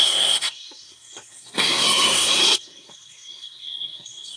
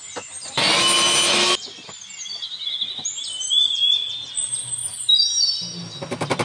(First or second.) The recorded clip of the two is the second